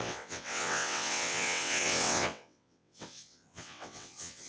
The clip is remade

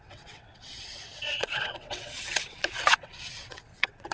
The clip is remade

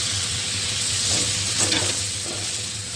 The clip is remade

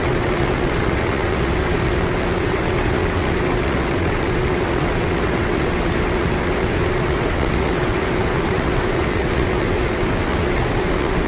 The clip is remade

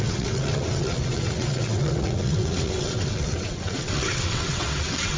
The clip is remade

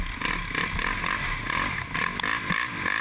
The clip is recorded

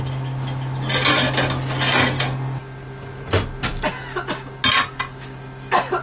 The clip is recorded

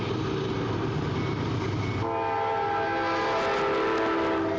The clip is recorded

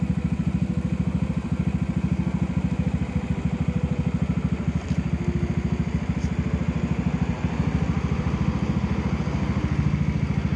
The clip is recorded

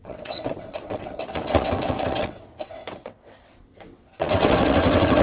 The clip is remade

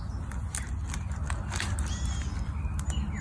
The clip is recorded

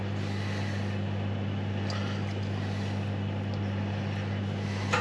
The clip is recorded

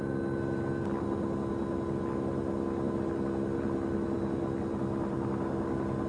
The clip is recorded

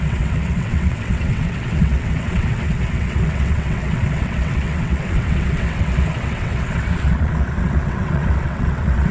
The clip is remade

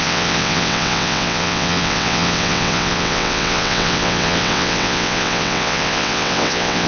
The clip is remade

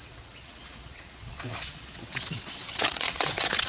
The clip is remade